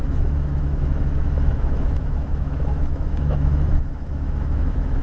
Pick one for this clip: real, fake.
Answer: fake